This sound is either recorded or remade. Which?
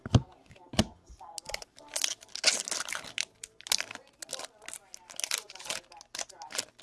recorded